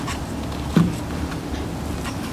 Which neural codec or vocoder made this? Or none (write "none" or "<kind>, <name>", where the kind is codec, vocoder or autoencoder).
none